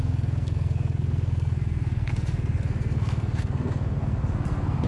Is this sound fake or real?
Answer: fake